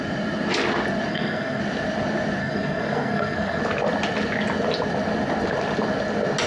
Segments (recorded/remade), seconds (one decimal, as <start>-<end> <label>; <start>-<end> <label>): 0.0-1.1 recorded; 1.1-1.6 remade; 1.6-2.4 recorded; 2.4-3.6 remade; 3.6-6.5 recorded